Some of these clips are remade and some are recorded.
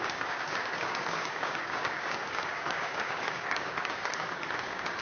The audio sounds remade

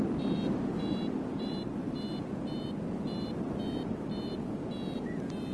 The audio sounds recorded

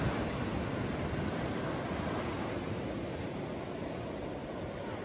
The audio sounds recorded